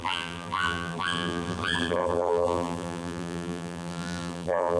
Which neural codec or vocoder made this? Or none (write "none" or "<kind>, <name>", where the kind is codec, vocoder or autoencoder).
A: vocoder, BigVGAN v2